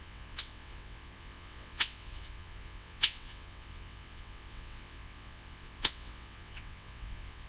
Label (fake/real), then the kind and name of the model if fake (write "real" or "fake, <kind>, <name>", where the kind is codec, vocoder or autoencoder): fake, vocoder, WaveNeXt